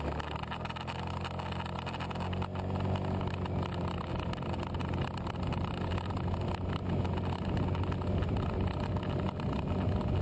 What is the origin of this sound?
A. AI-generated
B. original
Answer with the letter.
B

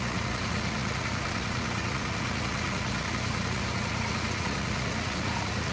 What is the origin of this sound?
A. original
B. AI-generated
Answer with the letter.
B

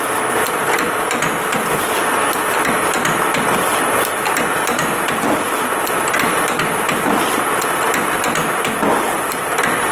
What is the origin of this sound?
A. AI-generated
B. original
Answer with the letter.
B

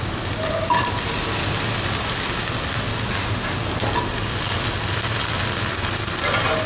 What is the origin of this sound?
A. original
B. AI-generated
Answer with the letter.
A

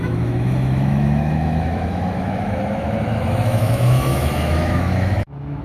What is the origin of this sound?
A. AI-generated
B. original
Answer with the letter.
A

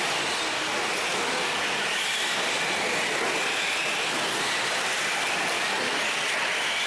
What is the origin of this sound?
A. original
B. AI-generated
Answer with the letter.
A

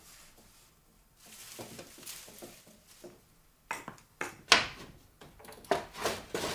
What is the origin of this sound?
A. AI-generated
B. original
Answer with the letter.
B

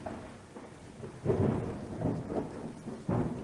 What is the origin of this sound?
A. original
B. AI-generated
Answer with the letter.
A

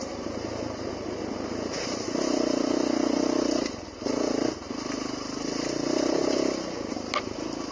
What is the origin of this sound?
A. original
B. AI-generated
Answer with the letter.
A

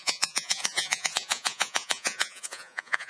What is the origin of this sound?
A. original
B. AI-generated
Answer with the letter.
B